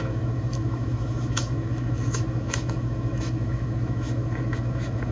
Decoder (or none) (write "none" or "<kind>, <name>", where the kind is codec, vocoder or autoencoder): autoencoder, DAC-VAE